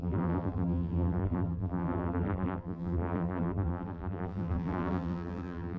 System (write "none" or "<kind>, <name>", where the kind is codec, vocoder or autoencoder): vocoder, BigVGAN v2